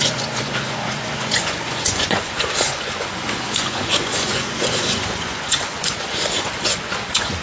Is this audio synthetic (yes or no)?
yes